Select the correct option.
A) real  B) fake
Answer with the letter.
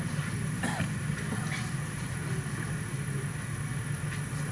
A